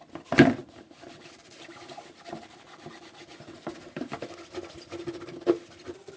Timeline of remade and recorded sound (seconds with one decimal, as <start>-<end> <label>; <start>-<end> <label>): 0.0-0.6 recorded; 0.6-4.3 remade; 4.3-6.2 recorded